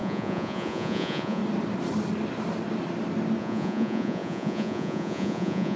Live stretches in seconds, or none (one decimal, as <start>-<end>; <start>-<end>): 1.4-3.4